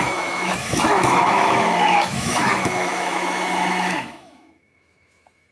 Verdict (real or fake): fake